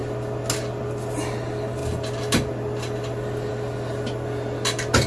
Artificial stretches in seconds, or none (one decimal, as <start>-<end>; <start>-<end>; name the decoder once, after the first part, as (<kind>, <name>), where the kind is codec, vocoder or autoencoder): none

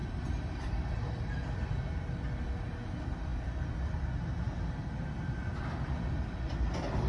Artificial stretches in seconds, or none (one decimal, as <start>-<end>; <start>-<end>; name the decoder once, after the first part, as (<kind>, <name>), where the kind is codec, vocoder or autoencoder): 0.0-1.3 (vocoder, BigVGAN v2)

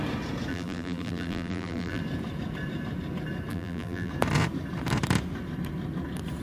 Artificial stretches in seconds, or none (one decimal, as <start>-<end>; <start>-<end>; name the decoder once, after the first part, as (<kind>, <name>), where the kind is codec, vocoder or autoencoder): 0.5-2.0 (vocoder, BigVGAN v2); 3.5-4.1

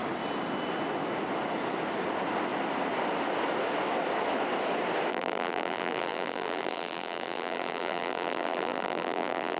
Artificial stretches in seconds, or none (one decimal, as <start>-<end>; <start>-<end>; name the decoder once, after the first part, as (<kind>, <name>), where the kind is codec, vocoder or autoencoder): 5.1-9.6 (vocoder, BigVGAN v2)

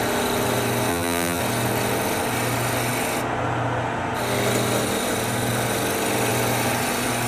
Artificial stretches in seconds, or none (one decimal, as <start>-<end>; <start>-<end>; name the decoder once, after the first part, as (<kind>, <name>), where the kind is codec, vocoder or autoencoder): 0.9-1.4 (vocoder, BigVGAN v2)

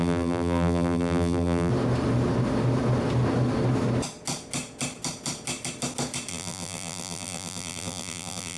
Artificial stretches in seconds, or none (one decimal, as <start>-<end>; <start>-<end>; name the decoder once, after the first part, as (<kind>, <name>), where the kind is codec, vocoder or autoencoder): 0.0-1.7 (vocoder, BigVGAN v2); 6.3-8.6

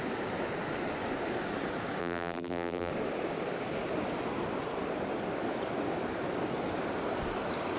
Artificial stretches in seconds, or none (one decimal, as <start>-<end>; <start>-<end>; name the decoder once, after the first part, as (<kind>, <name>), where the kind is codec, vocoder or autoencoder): 2.0-2.9 (vocoder, BigVGAN v2)

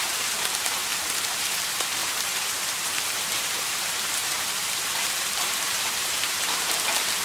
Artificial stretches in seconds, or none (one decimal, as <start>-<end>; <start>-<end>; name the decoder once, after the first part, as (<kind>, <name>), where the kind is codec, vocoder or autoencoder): 0.0-7.2 (vocoder, BigVGAN v2)